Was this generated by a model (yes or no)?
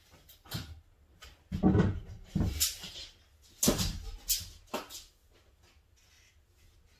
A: no